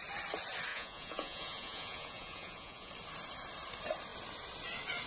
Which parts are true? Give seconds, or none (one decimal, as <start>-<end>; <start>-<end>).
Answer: 0.0-0.7; 2.9-5.1